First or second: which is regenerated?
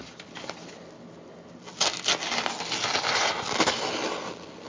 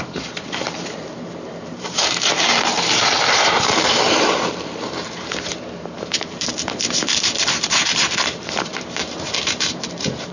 second